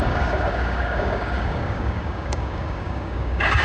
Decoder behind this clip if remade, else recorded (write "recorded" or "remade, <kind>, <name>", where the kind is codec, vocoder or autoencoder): remade, codec, DAC